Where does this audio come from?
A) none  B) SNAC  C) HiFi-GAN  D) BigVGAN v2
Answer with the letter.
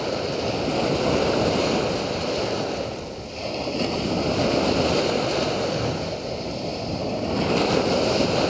A